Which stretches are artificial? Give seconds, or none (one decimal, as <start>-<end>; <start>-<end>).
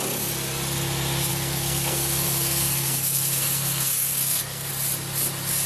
1.3-4.7